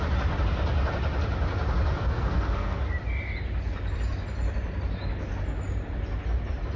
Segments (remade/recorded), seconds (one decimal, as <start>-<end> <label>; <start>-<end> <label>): 0.0-2.0 recorded; 2.0-2.8 remade; 2.8-6.8 recorded